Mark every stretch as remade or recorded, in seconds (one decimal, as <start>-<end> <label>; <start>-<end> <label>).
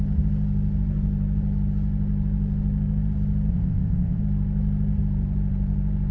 0.0-3.5 recorded; 3.5-4.2 remade; 4.2-6.1 recorded